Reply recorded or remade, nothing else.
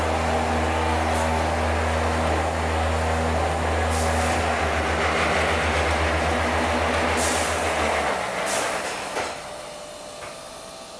recorded